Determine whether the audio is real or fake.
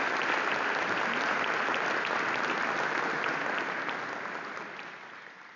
real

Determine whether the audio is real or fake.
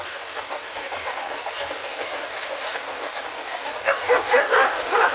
fake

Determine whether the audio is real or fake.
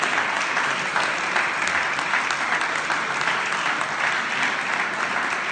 real